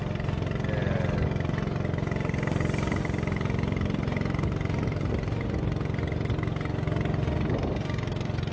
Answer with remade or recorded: recorded